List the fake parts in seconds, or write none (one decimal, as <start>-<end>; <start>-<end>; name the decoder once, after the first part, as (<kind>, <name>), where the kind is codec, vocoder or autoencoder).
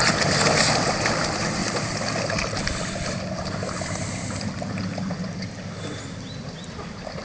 1.6-3.4 (vocoder, BigVGAN v2)